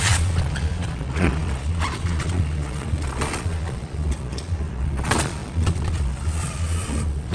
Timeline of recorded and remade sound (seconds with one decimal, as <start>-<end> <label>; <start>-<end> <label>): 0.0-7.3 remade

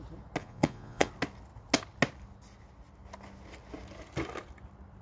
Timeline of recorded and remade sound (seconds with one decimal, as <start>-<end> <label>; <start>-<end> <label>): 0.0-0.4 recorded; 0.4-1.1 remade; 1.1-5.0 recorded